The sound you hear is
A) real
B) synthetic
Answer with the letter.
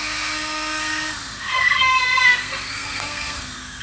B